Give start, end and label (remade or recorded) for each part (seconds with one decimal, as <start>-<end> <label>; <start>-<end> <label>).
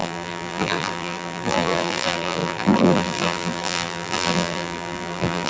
0.0-5.5 remade